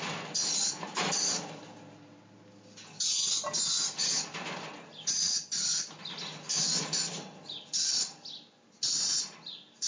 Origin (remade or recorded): recorded